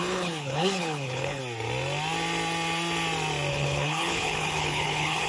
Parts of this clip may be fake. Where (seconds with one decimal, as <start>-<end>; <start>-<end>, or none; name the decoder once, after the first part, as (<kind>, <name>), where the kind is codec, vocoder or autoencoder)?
0.0-1.4 (codec, HILCodec); 3.5-5.3